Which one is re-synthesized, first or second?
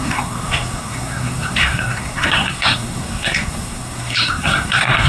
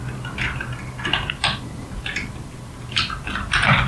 first